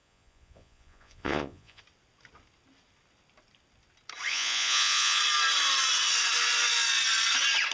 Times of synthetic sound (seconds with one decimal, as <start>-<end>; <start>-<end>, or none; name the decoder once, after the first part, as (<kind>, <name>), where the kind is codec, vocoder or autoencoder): 0.0-1.8 (vocoder, Vocos); 4.3-5.2